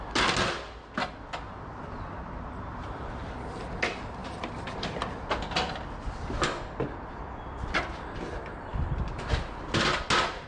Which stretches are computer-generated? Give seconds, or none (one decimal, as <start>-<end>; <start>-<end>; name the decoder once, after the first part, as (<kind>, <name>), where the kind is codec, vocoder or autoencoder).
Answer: none